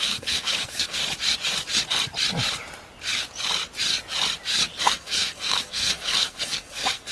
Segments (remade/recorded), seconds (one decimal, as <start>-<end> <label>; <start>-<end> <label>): 0.0-1.0 remade; 1.0-4.8 recorded; 4.8-7.1 remade